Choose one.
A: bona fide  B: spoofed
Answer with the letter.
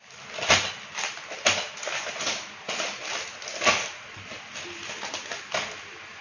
A